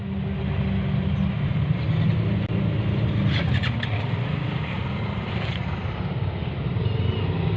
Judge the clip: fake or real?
real